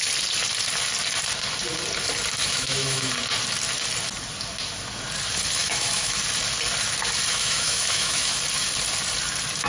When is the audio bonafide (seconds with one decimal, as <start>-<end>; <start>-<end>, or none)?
0.0-2.4; 3.1-5.6; 6.2-7.3; 8.4-9.7